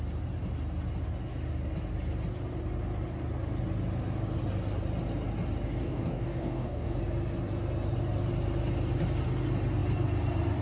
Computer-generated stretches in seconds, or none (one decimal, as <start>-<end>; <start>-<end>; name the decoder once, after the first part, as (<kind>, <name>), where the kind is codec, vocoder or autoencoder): 5.8-7.0 (codec, DAC)